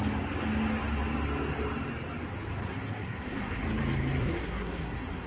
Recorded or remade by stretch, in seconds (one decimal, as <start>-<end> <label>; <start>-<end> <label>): 0.0-2.6 recorded; 2.6-3.6 remade; 3.6-4.2 recorded; 4.2-5.3 remade

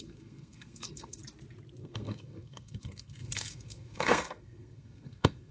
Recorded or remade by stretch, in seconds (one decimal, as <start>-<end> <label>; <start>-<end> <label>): 0.0-1.2 remade; 1.2-1.8 recorded; 1.8-5.5 remade

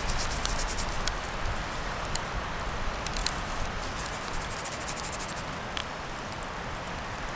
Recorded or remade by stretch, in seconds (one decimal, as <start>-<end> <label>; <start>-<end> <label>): 0.0-7.4 recorded

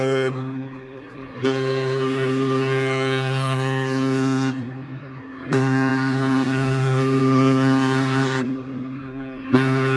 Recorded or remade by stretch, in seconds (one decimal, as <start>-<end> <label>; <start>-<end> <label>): 0.0-10.0 remade

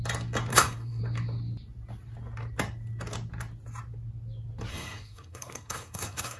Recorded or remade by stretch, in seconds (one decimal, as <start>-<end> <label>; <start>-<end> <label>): 0.0-0.5 recorded; 0.5-1.0 remade; 1.0-4.7 recorded; 4.7-6.4 remade